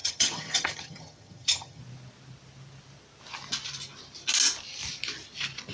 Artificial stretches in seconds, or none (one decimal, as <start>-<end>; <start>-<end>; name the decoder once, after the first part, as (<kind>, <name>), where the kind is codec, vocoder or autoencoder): 0.0-1.8 (vocoder, HiFi-GAN)